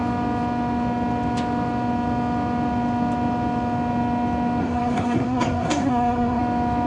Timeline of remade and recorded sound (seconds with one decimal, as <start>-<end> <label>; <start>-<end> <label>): 0.0-4.6 recorded; 4.6-6.4 remade; 6.4-6.9 recorded